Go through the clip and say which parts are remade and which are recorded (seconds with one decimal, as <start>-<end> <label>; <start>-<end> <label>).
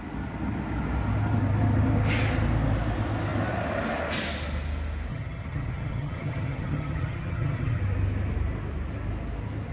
0.0-5.1 recorded; 5.1-7.8 remade; 7.8-9.7 recorded